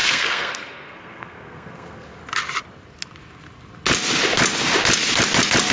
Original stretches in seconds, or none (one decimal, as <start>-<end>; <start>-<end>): 2.2-5.7